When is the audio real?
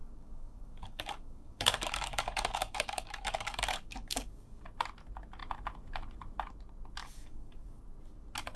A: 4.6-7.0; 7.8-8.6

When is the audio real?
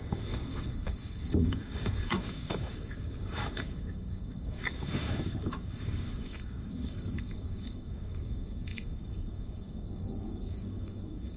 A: none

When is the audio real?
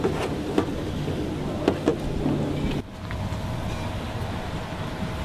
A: 0.0-0.7; 1.3-5.2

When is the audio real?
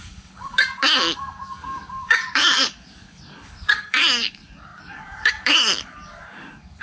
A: none